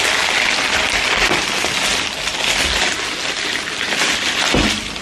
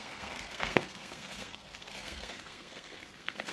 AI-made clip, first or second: second